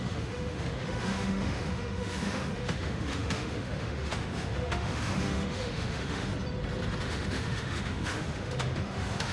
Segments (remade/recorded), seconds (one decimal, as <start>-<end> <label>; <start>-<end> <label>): 0.0-6.3 remade; 6.3-7.0 recorded; 7.0-9.3 remade